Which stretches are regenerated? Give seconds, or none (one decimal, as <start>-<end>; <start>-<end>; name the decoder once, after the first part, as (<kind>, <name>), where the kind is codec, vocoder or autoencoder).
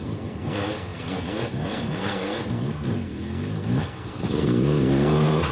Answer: 0.0-5.5 (codec, SNAC)